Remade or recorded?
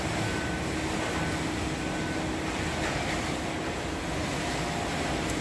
recorded